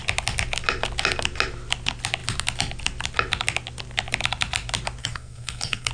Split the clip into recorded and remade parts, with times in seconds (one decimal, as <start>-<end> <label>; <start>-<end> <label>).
0.0-5.0 recorded; 5.0-5.9 remade

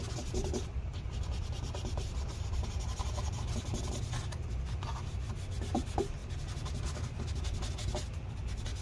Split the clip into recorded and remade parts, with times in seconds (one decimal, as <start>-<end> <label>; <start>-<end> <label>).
0.0-8.8 recorded

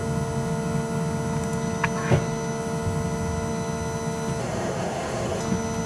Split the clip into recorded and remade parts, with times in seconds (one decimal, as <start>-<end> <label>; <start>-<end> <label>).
0.0-4.4 recorded; 4.4-5.4 remade; 5.4-5.9 recorded

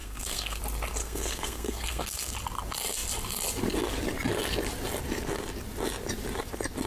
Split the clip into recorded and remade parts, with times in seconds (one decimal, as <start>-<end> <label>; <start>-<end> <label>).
0.0-0.6 remade; 0.6-1.0 recorded; 1.0-2.3 remade; 2.3-6.9 recorded

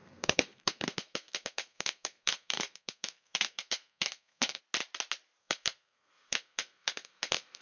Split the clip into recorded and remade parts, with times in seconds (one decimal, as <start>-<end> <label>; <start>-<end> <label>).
0.0-4.6 remade; 4.6-5.4 recorded; 5.4-7.6 remade

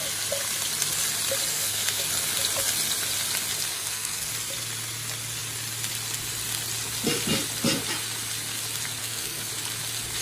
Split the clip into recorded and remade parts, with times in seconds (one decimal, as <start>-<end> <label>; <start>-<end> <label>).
0.0-1.5 recorded; 1.5-2.1 remade; 2.1-3.7 recorded; 3.7-4.3 remade; 4.3-9.0 recorded; 9.0-9.5 remade; 9.5-10.2 recorded

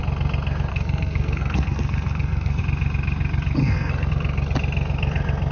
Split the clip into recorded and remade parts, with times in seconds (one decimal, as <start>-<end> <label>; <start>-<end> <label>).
0.0-0.7 recorded; 0.7-2.6 remade; 2.6-3.6 recorded; 3.6-4.1 remade; 4.1-5.5 recorded